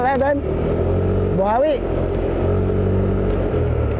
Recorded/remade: recorded